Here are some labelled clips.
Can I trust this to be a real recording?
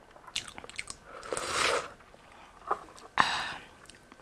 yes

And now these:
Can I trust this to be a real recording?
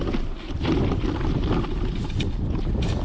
yes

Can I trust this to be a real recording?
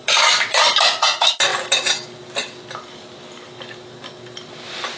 yes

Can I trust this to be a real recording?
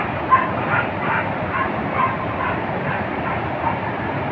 yes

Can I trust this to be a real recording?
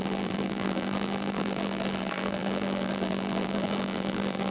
no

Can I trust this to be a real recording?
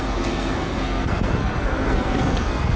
no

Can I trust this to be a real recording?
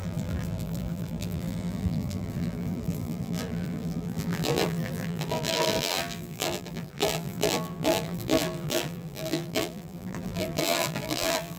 no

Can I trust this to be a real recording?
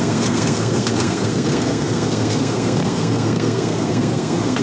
no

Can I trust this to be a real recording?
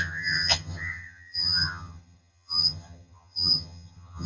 no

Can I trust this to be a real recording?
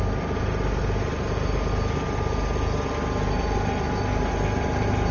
yes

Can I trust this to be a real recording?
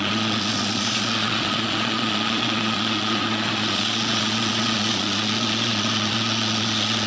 no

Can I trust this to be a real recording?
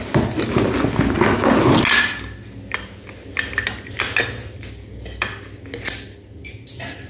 yes